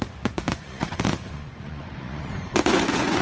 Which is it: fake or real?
fake